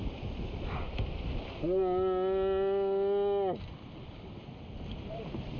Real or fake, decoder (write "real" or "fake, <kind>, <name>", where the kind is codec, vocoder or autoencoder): real